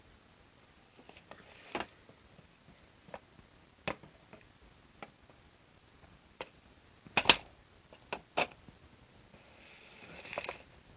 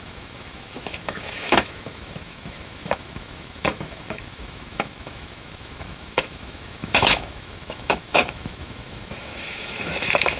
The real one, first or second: first